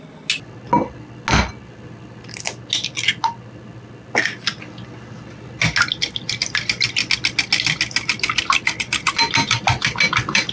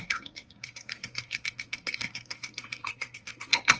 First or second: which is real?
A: first